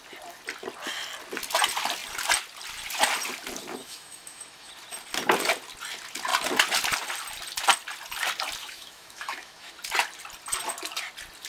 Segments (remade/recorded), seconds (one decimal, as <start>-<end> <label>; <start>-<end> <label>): 0.0-3.8 recorded; 3.8-4.7 remade; 4.7-8.6 recorded; 8.6-9.7 remade; 9.7-11.5 recorded